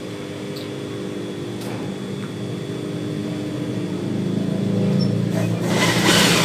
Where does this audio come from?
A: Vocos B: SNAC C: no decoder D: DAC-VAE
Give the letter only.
C